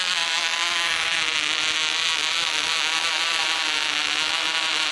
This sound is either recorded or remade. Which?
remade